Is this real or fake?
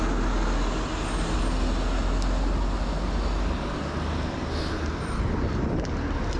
real